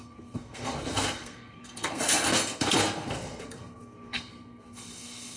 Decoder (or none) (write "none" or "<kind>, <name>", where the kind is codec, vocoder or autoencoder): codec, SNAC